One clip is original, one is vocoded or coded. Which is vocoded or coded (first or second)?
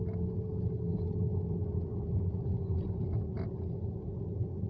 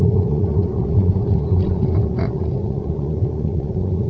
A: second